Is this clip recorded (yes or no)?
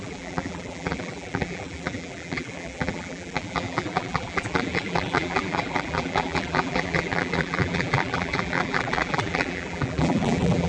no